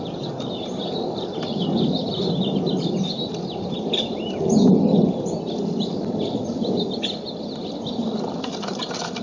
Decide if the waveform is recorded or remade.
recorded